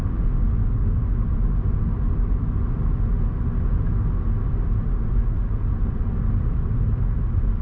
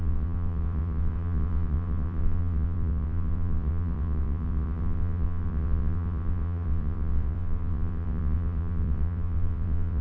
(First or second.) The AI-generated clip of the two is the second